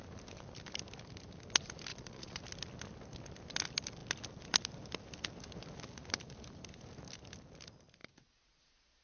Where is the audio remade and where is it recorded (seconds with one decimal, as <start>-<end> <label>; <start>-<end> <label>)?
0.0-1.9 recorded; 1.9-2.4 remade; 2.4-8.0 recorded; 8.0-8.6 remade; 8.6-9.0 recorded